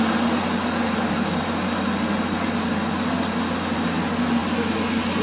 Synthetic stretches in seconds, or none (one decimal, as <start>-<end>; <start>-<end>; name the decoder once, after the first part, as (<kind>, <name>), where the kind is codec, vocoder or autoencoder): none